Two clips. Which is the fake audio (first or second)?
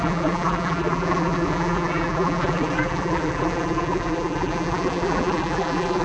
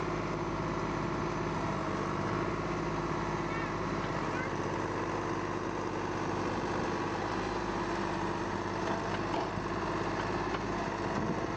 first